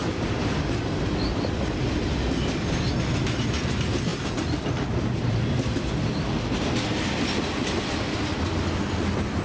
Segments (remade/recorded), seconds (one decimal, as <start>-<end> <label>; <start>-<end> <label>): 0.0-9.4 recorded